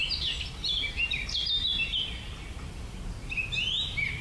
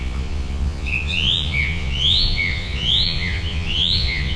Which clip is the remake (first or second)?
second